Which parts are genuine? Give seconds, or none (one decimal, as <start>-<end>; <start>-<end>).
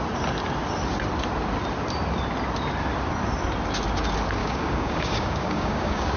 0.0-4.4